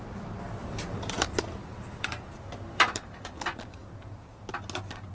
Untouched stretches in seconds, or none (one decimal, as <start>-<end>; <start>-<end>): 0.0-0.6; 3.7-5.1